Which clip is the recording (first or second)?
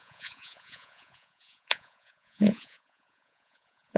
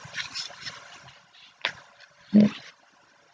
second